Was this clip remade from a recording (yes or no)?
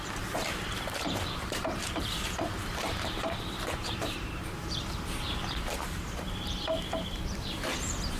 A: yes